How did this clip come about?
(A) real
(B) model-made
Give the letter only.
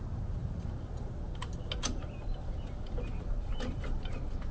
A